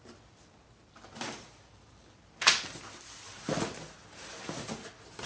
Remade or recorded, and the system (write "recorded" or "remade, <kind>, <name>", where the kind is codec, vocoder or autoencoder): recorded